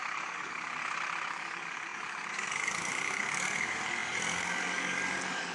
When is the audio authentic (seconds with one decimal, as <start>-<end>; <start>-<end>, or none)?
0.8-1.3